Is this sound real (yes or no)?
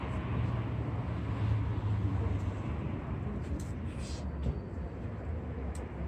yes